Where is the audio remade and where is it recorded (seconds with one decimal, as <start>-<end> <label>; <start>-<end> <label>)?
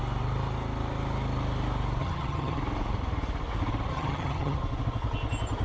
0.0-2.0 recorded; 2.0-2.6 remade; 2.6-3.9 recorded; 3.9-4.6 remade; 4.6-5.6 recorded